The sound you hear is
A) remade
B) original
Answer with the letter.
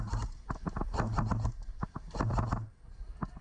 B